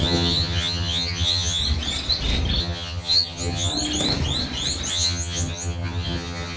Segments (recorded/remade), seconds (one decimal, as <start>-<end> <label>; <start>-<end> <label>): 0.0-1.6 remade; 1.6-2.6 recorded; 2.6-3.7 remade; 3.7-4.9 recorded; 4.9-6.6 remade